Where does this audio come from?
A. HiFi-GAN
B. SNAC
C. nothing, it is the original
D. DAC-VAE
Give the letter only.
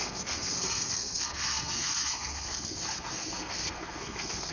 B